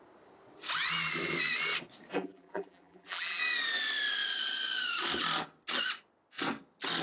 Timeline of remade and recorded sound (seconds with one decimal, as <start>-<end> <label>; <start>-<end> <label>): 0.0-2.1 recorded; 2.1-3.4 remade; 3.4-7.0 recorded